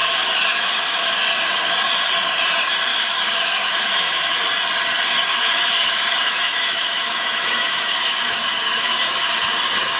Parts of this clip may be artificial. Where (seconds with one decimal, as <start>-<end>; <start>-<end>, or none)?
0.0-1.1; 2.9-4.4; 5.3-9.3